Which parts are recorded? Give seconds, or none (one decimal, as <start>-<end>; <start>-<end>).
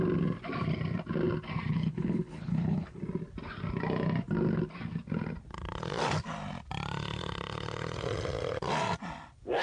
0.0-1.7; 3.0-9.6